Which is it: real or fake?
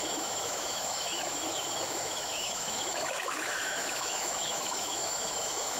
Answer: fake